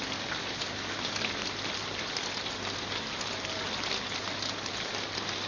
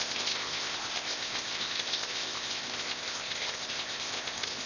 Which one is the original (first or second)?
first